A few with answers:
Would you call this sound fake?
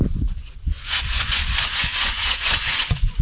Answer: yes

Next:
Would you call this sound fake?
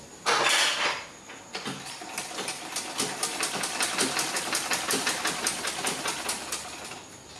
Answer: no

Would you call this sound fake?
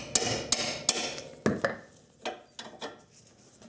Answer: no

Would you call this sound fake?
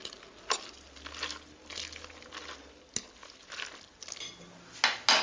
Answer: no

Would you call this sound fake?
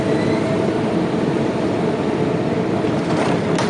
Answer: no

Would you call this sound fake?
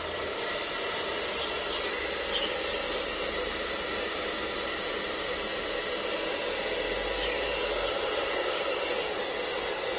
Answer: no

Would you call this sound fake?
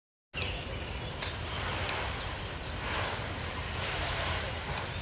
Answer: no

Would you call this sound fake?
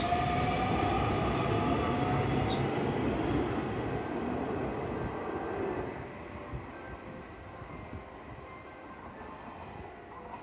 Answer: no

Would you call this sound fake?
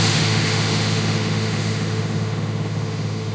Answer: yes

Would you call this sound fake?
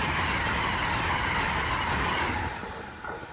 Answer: no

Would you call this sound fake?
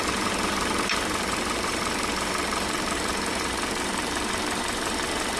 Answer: yes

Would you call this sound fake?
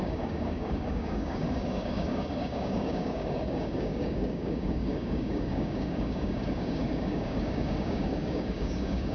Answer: yes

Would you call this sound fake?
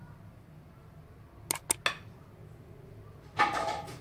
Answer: no